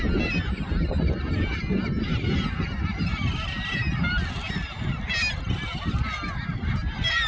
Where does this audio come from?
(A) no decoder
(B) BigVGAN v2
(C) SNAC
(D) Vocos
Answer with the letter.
A